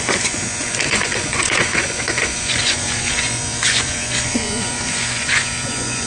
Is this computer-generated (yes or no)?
yes